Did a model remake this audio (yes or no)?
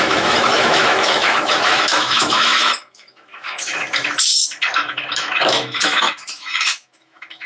yes